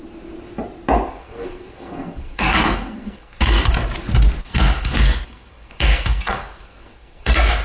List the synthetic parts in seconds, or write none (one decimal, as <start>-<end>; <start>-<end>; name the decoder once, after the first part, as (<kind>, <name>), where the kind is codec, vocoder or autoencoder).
1.2-3.7 (codec, SNAC); 4.4-7.6